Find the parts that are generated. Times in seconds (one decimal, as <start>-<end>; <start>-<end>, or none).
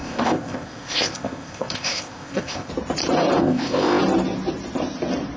0.0-2.7; 3.4-4.0